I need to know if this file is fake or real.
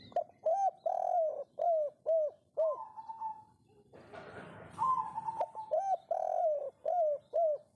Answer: real